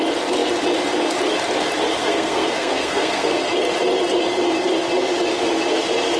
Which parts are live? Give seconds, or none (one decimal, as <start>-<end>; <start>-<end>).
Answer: 0.0-2.0; 3.5-6.2